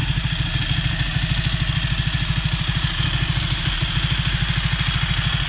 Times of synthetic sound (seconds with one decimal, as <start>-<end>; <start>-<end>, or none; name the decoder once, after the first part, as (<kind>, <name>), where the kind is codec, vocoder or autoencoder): none